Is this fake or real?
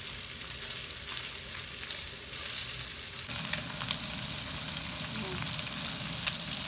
real